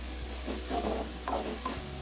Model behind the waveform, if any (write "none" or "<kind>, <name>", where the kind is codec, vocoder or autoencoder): codec, DAC